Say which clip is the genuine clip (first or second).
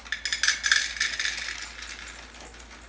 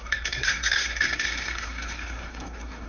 first